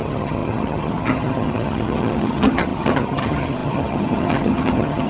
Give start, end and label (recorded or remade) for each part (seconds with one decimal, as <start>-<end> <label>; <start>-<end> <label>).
0.0-5.1 remade